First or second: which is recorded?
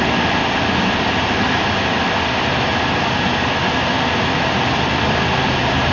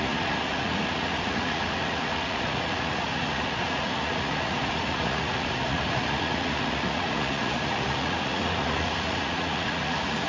first